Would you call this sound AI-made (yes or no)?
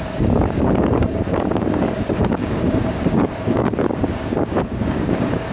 yes